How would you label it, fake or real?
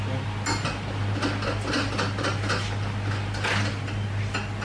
real